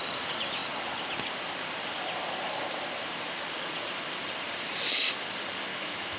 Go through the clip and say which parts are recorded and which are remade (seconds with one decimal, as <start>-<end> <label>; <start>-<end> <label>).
0.0-5.7 recorded; 5.7-6.2 remade